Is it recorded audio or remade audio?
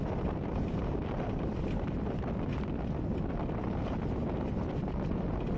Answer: recorded